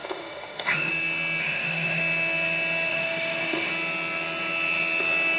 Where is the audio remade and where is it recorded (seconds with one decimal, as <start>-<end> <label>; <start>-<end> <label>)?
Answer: 0.0-0.9 remade; 0.9-1.4 recorded; 1.4-2.0 remade; 2.0-2.9 recorded; 2.9-3.7 remade; 3.7-5.4 recorded